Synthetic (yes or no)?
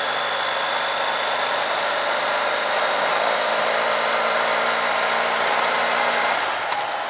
no